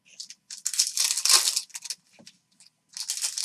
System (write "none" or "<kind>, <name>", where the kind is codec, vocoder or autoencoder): none